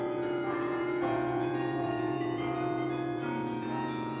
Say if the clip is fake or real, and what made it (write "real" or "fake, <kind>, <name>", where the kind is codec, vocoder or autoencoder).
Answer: fake, vocoder, Vocos